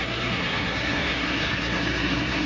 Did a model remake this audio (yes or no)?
yes